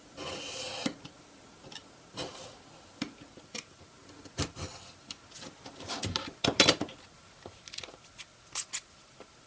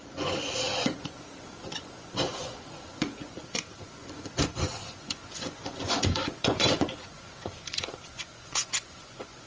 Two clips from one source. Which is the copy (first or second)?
second